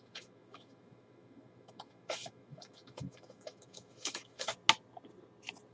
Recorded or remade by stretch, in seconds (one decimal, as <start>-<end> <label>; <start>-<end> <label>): 0.0-4.5 remade; 4.5-5.7 recorded